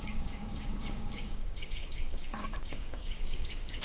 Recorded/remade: remade